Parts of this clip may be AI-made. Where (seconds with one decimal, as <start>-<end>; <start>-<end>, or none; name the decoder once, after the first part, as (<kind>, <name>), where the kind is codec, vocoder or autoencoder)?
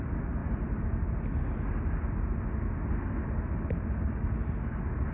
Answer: none